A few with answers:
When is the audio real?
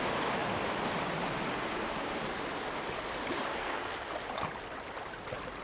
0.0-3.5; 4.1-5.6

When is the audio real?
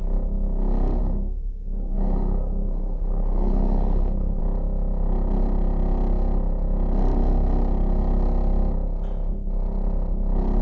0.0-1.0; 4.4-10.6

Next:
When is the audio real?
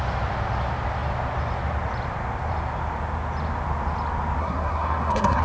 0.0-4.4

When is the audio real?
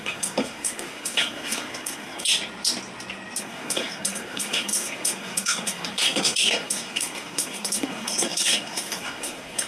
2.3-3.4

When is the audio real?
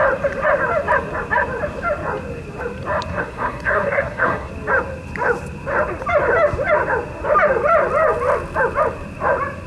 0.0-3.1; 4.5-9.7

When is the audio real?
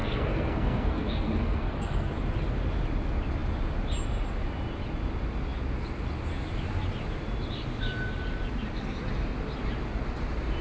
2.1-10.6